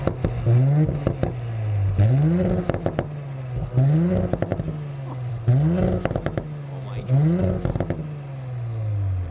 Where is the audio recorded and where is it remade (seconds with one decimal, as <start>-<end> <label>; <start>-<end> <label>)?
0.0-9.3 recorded